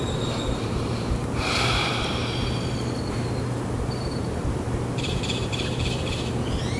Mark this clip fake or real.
fake